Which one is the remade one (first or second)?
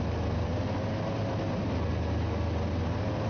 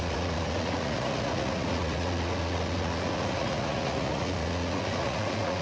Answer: second